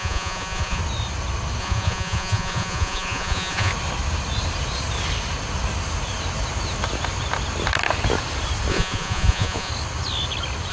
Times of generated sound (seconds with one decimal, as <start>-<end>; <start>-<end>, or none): 0.0-0.8; 1.6-3.7; 8.7-9.7